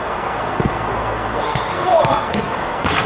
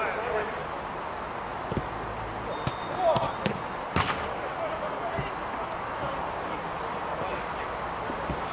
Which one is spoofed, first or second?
first